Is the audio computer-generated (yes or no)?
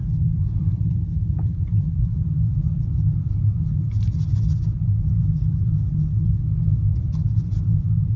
yes